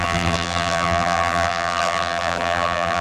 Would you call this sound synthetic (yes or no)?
yes